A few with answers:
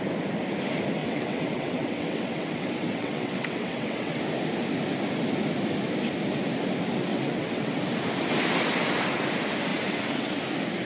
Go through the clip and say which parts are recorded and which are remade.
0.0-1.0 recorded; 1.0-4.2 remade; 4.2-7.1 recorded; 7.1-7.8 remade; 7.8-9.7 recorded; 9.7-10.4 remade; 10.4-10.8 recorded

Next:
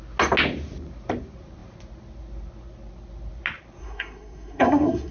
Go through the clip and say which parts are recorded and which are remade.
0.0-3.8 recorded; 3.8-5.1 remade

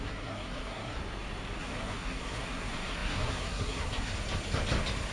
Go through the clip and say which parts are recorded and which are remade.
0.0-1.0 remade; 1.0-1.6 recorded; 1.6-4.1 remade; 4.1-5.1 recorded

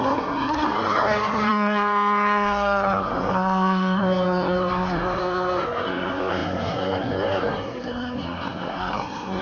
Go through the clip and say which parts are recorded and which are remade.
0.0-9.4 remade

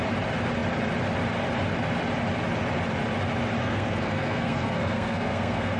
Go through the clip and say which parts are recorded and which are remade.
0.0-3.6 recorded; 3.6-5.8 remade